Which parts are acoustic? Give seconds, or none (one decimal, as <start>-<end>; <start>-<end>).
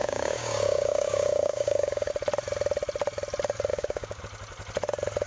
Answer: 2.1-3.7; 4.2-5.3